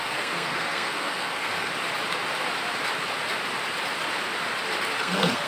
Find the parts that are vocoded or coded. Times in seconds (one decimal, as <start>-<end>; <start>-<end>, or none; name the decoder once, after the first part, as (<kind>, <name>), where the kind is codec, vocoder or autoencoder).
0.0-1.7 (codec, SNAC); 5.0-5.5